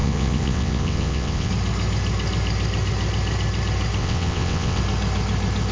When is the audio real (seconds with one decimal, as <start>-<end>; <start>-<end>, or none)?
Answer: 1.5-4.0; 4.8-5.7